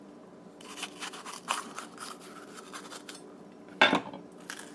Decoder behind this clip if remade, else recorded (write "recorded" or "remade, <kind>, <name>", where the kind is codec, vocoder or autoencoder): recorded